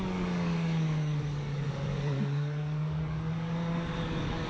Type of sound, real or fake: fake